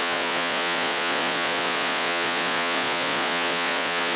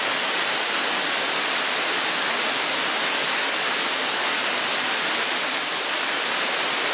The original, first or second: second